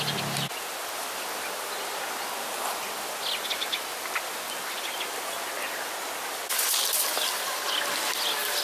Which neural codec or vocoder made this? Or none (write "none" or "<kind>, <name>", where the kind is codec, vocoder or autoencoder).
none